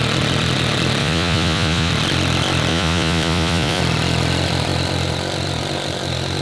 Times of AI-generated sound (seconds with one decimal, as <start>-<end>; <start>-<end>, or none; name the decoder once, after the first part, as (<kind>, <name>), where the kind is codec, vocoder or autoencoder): 1.0-1.9 (vocoder, Vocos); 2.7-3.8